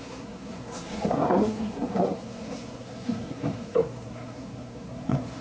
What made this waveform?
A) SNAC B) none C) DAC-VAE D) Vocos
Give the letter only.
A